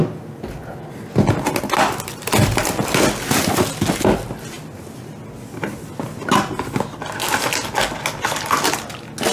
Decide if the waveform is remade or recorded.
recorded